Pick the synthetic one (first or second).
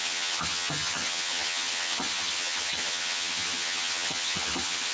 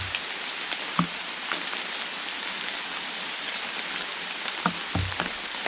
first